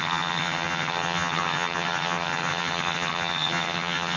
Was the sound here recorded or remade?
remade